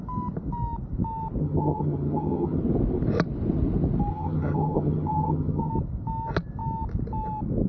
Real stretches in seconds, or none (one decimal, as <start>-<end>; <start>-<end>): 0.0-1.4; 2.6-4.1; 5.7-7.7